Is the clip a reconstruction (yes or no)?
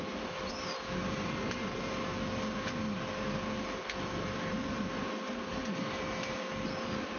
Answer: no